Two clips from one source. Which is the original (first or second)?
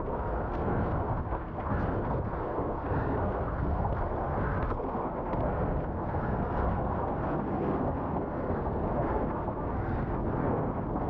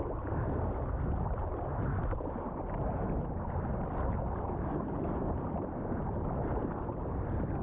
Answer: second